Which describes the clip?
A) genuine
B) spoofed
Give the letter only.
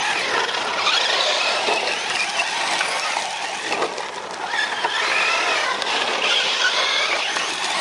A